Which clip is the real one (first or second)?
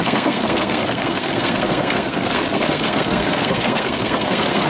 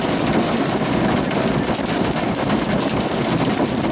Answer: second